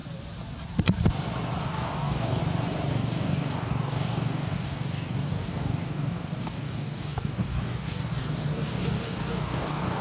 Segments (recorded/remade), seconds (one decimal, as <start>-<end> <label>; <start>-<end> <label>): 0.0-1.6 recorded; 1.6-2.4 remade; 2.4-2.9 recorded; 2.9-10.0 remade

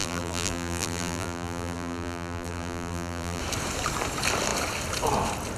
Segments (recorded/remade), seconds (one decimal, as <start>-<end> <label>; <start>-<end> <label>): 0.0-3.4 remade; 3.4-5.6 recorded

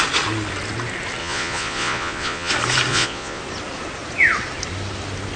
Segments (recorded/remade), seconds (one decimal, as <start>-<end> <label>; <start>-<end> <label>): 0.0-1.2 recorded; 1.2-2.5 remade; 2.5-2.9 recorded; 2.9-3.4 remade; 3.4-5.4 recorded

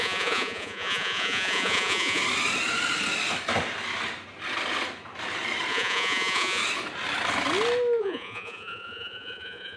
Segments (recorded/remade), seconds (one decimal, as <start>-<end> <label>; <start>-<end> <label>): 0.0-2.2 remade; 2.2-5.7 recorded; 5.7-6.6 remade; 6.6-8.0 recorded; 8.0-9.8 remade

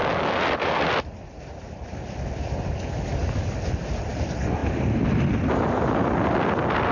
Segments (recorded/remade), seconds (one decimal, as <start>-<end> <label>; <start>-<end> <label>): 0.0-6.9 recorded

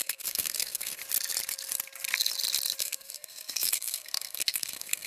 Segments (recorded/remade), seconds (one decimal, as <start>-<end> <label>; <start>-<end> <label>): 0.0-1.0 remade; 1.0-2.8 recorded; 2.8-5.1 remade

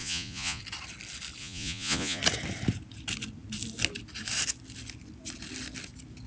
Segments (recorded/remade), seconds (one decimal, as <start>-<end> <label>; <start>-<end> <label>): 0.0-0.6 remade; 0.6-1.4 recorded; 1.4-2.2 remade; 2.2-6.3 recorded